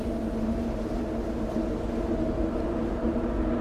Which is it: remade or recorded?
recorded